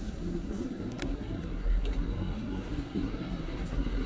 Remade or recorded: remade